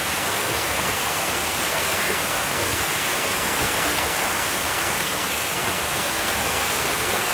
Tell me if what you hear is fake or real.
fake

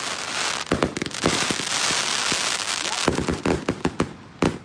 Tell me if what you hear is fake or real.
real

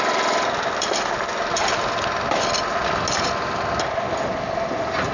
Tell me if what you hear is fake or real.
real